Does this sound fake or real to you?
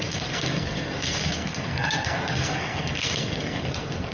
fake